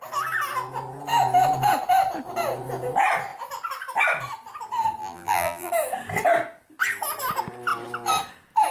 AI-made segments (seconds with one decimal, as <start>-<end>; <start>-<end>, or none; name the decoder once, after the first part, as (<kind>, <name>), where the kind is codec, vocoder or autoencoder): 5.0-5.7 (vocoder, BigVGAN v2)

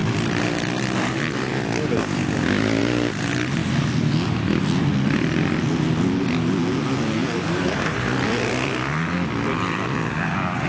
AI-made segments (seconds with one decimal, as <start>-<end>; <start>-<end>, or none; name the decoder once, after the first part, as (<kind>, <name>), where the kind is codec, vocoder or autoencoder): 0.0-1.1 (vocoder, BigVGAN v2); 7.2-8.0

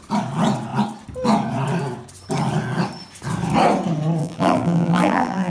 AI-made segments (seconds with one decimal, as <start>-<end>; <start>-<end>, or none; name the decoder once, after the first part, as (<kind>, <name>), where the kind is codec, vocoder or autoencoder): 4.2-5.5 (vocoder, BigVGAN v2)

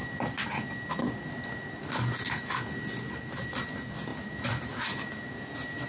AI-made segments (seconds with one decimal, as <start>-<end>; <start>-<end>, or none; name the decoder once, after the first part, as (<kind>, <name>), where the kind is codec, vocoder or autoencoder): 4.1-5.3 (vocoder, BigVGAN v2)

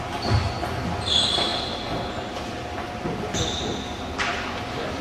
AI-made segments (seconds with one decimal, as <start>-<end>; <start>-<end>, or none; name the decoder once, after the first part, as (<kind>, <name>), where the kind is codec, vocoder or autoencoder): none

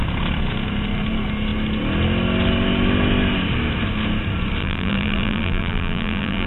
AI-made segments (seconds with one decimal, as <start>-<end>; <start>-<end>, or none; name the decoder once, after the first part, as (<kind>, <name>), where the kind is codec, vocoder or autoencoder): 4.6-6.5 (vocoder, BigVGAN v2)

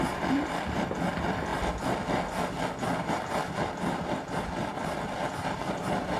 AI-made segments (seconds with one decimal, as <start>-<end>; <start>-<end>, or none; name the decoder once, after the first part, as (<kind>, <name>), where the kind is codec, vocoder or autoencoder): 0.0-1.5 (vocoder, BigVGAN v2); 3.1-6.2